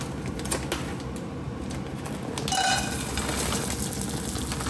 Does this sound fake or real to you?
real